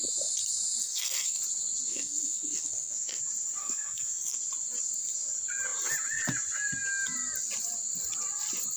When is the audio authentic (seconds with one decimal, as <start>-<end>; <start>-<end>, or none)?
0.0-0.8; 1.4-1.9; 3.2-3.6; 4.4-8.8